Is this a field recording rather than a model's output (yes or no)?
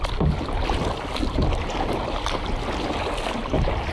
yes